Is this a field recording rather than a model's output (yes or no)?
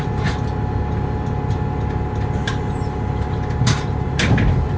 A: yes